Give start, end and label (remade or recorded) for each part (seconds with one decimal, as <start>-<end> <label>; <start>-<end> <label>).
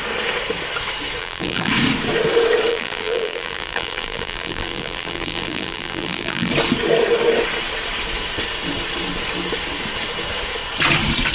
0.0-1.2 recorded; 1.2-1.7 remade; 1.7-2.7 recorded; 2.7-6.5 remade; 6.5-11.3 recorded